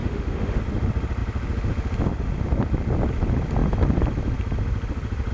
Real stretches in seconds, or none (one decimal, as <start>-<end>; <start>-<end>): 0.6-5.3